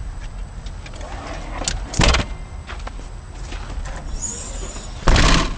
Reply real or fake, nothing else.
real